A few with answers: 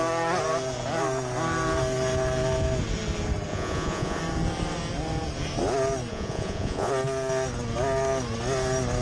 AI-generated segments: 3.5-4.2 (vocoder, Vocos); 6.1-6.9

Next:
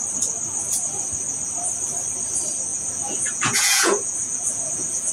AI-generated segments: 2.7-5.1 (vocoder, Vocos)

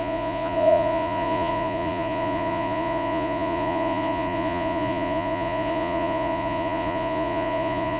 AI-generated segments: 0.0-8.0 (vocoder, Vocos)

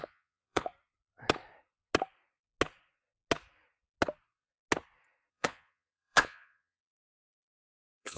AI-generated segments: 0.0-0.7 (vocoder, Vocos); 5.3-8.2